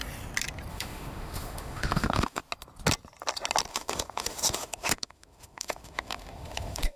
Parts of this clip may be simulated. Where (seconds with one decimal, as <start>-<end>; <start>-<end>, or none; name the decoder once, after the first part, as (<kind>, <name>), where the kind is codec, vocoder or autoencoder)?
0.7-2.4 (autoencoder, DAC-VAE); 3.7-7.0